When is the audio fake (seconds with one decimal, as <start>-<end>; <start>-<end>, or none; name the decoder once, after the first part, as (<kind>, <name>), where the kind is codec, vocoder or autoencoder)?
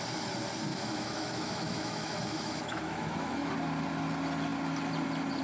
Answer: 0.7-3.5 (autoencoder, DAC-VAE)